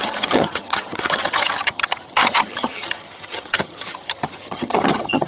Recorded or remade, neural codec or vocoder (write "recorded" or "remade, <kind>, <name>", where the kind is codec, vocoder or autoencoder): remade, vocoder, HiFi-GAN